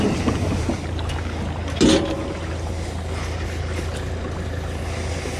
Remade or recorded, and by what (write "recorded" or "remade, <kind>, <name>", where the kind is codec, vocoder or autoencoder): recorded